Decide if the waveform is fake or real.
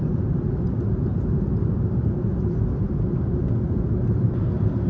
real